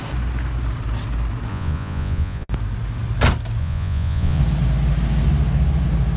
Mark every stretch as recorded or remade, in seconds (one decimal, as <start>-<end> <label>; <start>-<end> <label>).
0.0-1.5 recorded; 1.5-2.5 remade; 2.5-3.6 recorded; 3.6-4.4 remade; 4.4-6.2 recorded